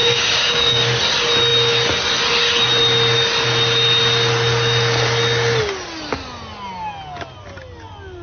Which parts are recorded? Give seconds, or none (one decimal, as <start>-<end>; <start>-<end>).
1.0-8.2